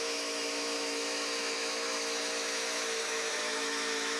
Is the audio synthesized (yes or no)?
yes